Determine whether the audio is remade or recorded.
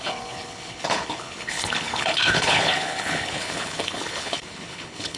remade